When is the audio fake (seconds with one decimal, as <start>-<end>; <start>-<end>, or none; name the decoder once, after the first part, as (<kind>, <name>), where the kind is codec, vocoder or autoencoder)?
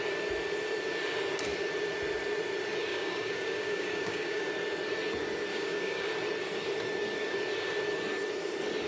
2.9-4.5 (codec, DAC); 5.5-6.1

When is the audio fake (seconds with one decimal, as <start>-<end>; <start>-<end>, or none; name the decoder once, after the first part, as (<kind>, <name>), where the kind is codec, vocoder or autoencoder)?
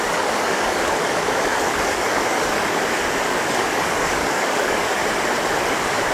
0.0-5.0 (codec, DAC); 5.6-6.1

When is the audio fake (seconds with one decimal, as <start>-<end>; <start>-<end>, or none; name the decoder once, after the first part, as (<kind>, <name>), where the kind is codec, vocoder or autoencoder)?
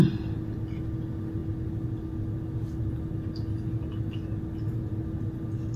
none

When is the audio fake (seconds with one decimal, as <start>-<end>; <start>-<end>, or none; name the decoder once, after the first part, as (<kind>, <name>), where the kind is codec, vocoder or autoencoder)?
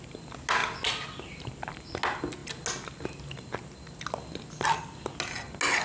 none